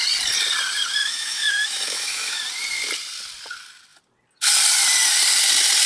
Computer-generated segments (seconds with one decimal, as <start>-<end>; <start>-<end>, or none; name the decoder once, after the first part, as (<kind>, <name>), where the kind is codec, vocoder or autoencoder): 1.0-2.4 (autoencoder, DAC-VAE)